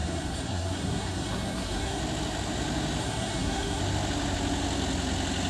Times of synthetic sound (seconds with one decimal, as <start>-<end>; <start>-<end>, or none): 0.0-2.0; 3.0-3.8